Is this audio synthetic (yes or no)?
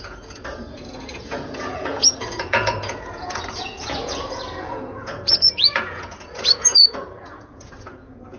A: yes